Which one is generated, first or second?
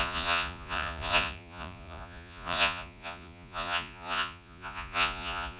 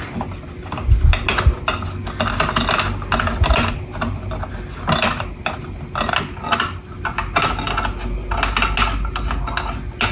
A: first